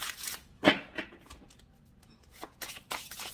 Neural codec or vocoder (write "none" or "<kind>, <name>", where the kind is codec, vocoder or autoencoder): vocoder, Vocos